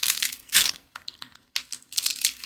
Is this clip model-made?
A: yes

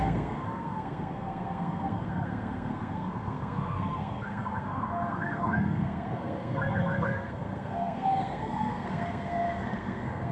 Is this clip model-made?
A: yes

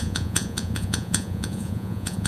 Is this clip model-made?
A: yes